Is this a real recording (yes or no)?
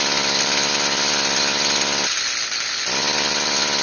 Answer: yes